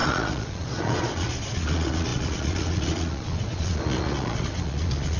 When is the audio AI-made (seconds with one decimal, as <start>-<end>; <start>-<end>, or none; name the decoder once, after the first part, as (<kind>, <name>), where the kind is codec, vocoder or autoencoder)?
0.0-5.2 (vocoder, Vocos)